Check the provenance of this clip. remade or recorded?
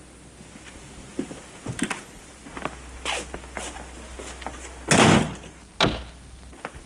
recorded